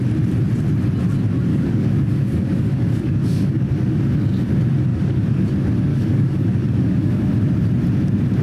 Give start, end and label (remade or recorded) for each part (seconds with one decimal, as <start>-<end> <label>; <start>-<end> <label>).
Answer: 0.0-1.5 recorded; 1.5-4.0 remade; 4.0-4.9 recorded; 4.9-5.5 remade; 5.5-5.9 recorded; 5.9-7.3 remade; 7.3-8.4 recorded